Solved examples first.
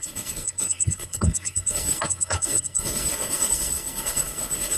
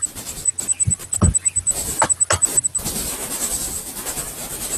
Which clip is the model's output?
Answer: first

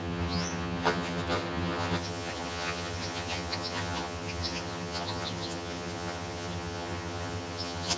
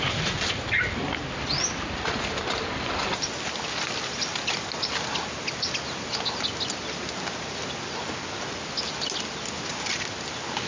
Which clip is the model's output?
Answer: first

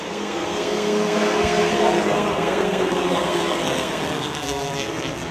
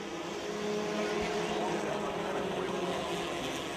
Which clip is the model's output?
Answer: first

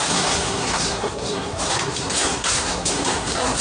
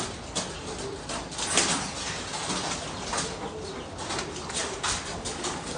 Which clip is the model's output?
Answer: first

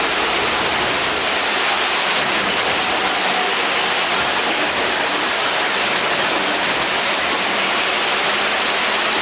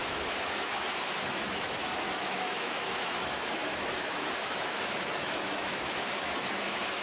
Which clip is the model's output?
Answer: second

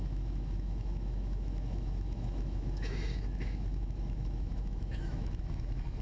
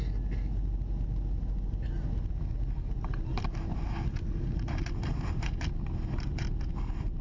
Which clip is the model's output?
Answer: first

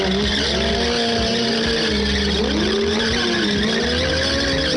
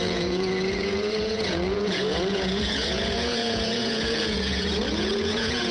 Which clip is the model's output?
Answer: second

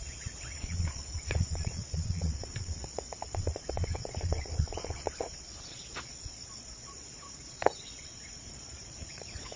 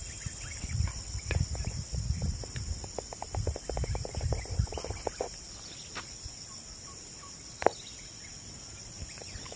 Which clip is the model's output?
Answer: first